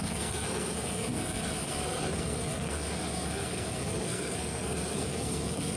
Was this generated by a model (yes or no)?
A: yes